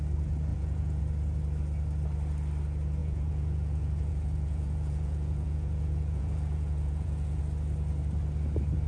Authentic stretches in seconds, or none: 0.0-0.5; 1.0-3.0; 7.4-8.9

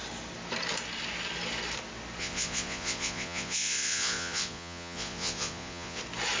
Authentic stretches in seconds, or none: 0.0-2.2; 6.0-6.4

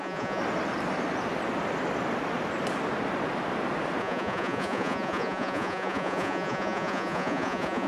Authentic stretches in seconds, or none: 0.4-4.0

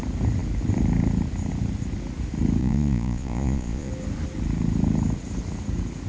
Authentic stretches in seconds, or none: 0.0-2.6; 3.9-6.1

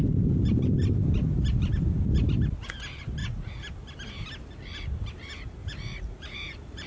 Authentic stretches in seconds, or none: 0.0-3.2; 3.7-5.6

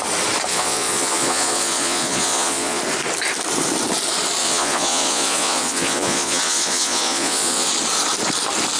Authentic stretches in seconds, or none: 0.0-0.5; 2.8-4.4; 7.7-8.8